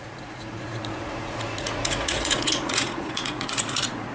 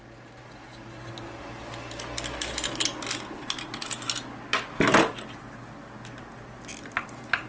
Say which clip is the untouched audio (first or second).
second